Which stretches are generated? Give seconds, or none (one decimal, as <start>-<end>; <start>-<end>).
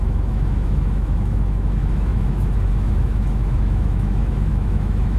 0.0-5.2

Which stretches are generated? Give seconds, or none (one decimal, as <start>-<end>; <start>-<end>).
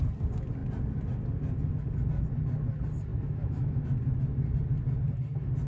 3.1-3.8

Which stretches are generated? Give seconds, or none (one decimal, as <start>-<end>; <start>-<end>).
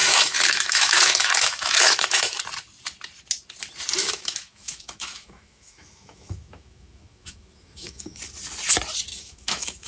0.0-2.4; 4.0-8.2; 9.1-9.9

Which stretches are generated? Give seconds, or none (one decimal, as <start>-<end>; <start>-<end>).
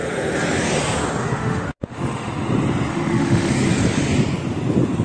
1.2-2.3; 2.9-3.5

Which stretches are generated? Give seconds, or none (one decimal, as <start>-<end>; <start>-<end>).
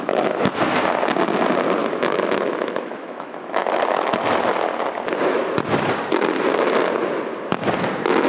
1.8-4.1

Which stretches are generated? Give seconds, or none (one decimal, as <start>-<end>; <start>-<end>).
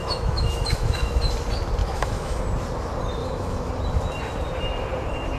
0.0-1.2; 1.8-2.4; 3.2-3.7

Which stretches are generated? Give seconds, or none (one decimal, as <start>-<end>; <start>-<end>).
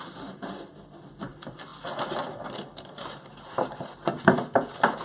none